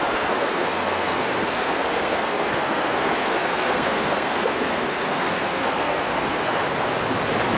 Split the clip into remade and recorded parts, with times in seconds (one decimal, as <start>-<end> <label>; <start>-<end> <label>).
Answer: 0.0-6.6 remade; 6.6-7.6 recorded